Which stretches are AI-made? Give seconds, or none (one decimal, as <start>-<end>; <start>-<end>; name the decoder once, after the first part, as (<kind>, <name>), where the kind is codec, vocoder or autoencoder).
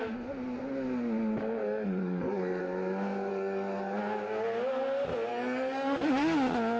1.6-2.6 (codec, DAC); 3.3-4.0; 5.3-6.1